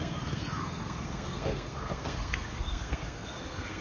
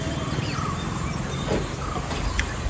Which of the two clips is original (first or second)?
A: second